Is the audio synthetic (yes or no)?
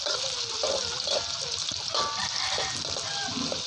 no